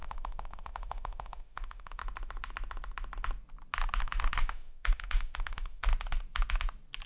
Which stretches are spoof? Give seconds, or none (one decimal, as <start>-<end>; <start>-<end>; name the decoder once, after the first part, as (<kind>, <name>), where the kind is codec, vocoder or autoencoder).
0.0-2.0 (autoencoder, DAC-VAE); 4.0-5.9